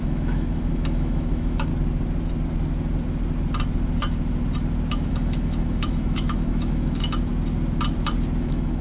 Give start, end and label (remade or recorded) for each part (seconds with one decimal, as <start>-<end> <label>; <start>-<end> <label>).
0.0-1.7 remade; 1.7-5.1 recorded; 5.1-7.3 remade; 7.3-8.4 recorded; 8.4-8.8 remade